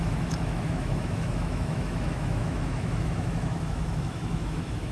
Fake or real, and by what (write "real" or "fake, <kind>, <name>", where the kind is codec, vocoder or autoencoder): fake, autoencoder, DAC-VAE